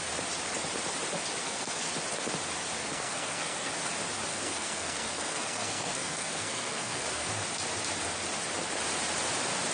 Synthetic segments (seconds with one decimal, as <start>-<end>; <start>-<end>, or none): 1.4-1.9; 2.8-3.7; 4.3-7.3